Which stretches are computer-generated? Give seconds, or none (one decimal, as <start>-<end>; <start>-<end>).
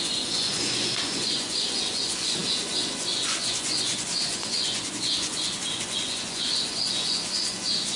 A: 0.0-8.0